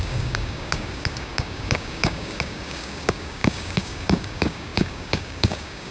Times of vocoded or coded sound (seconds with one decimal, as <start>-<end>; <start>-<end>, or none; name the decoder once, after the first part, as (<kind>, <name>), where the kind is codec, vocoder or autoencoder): 0.0-5.9 (codec, DAC)